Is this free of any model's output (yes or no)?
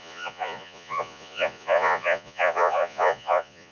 no